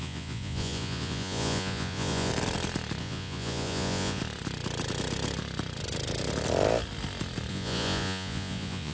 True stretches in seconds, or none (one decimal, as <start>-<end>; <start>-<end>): 2.3-3.0; 4.2-7.5